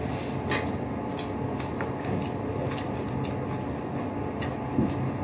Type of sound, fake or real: real